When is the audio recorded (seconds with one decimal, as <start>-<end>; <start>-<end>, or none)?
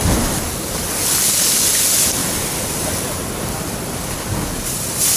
0.0-5.2